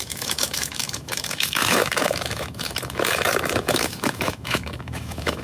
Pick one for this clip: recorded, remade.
remade